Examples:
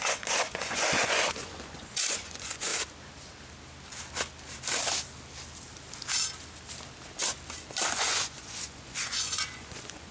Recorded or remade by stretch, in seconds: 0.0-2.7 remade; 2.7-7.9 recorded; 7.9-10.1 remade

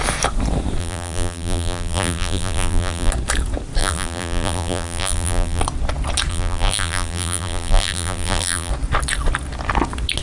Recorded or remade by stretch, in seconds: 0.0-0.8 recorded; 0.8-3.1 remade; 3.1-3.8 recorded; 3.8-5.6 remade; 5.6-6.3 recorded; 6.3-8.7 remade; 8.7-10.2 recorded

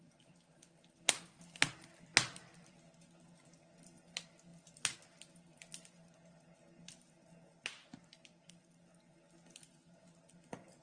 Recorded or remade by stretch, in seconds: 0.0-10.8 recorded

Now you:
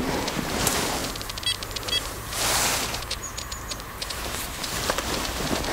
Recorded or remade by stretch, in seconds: 0.0-1.0 remade; 1.0-1.8 recorded; 1.8-5.7 remade

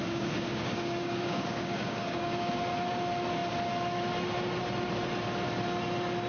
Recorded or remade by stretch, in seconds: 0.0-2.5 remade; 2.5-6.3 recorded

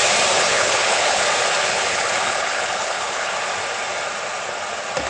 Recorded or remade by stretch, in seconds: 0.0-0.5 recorded; 0.5-1.2 remade; 1.2-1.7 recorded; 1.7-3.3 remade; 3.3-5.1 recorded